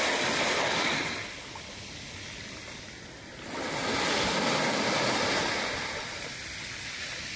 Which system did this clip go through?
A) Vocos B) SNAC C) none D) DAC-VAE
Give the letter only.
C